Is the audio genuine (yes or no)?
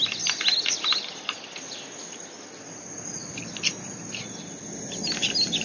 yes